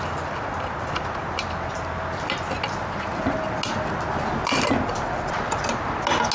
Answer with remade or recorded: recorded